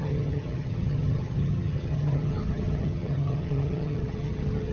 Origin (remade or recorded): remade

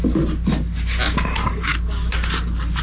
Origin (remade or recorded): recorded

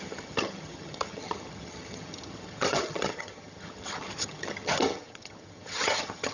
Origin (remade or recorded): remade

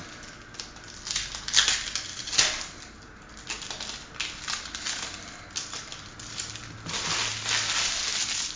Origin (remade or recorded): recorded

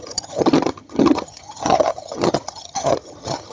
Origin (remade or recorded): remade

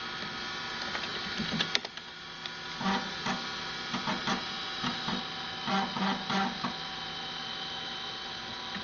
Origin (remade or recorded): recorded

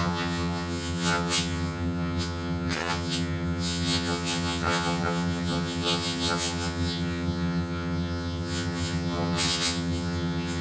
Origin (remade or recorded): remade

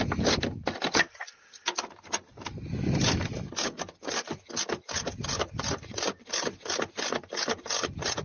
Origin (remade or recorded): recorded